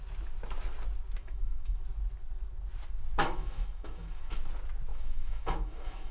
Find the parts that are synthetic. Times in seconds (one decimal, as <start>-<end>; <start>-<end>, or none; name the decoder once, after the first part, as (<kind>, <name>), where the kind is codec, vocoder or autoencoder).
1.2-1.8 (autoencoder, DAC-VAE); 3.2-4.4; 4.9-6.1